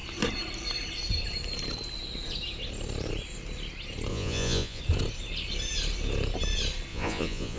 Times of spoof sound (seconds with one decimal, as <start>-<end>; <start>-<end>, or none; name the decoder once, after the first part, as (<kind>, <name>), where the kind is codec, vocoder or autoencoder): 4.1-4.8 (vocoder, Vocos); 6.9-7.6